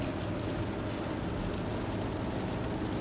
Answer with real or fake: real